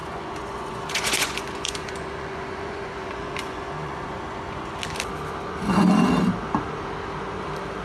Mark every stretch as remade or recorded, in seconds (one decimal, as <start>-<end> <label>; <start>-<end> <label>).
0.0-4.7 remade; 4.7-7.8 recorded

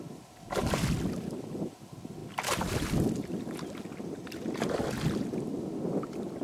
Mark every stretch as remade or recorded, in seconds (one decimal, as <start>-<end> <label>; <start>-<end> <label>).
0.0-6.4 recorded